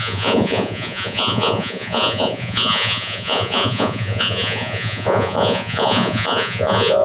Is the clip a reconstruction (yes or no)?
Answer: yes